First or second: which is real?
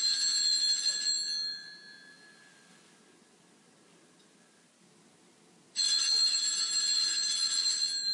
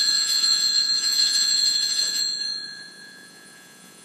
first